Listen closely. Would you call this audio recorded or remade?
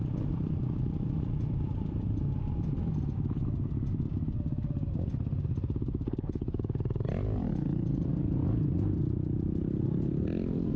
recorded